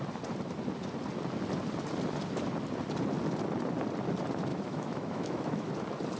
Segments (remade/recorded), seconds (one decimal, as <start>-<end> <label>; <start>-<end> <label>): 0.0-4.5 recorded; 4.5-5.7 remade; 5.7-6.2 recorded